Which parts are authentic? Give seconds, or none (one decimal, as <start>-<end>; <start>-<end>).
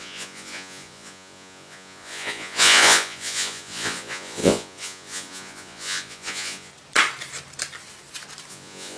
6.7-8.5